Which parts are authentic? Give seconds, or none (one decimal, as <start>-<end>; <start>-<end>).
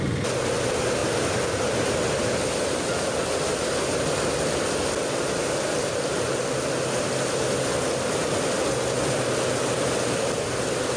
0.0-11.0